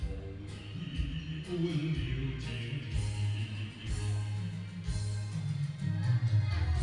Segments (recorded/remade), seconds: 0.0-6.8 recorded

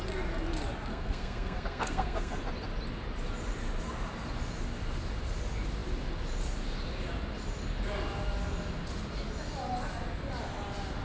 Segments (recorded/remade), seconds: 0.0-0.9 recorded; 0.9-2.4 remade; 2.4-11.0 recorded

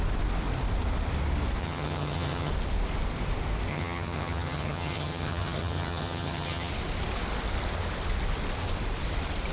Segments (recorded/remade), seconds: 0.0-1.6 recorded; 1.6-2.5 remade; 2.5-3.7 recorded; 3.7-6.7 remade; 6.7-9.5 recorded

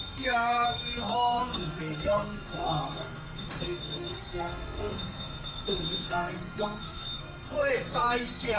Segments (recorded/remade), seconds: 0.0-8.6 remade

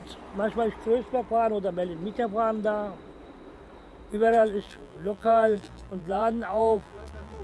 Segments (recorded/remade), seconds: 0.0-4.1 recorded; 4.1-7.4 remade

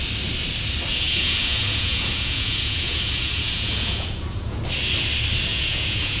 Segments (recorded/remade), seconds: 0.0-0.9 recorded; 0.9-4.6 remade; 4.6-5.5 recorded; 5.5-6.2 remade

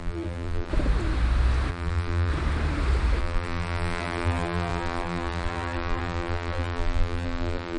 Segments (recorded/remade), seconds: 0.0-0.7 remade; 0.7-1.7 recorded; 1.7-2.3 remade; 2.3-3.2 recorded; 3.2-7.8 remade

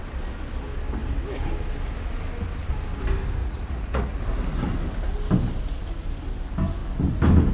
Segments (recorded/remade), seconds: 0.0-3.4 recorded; 3.4-4.2 remade; 4.2-7.5 recorded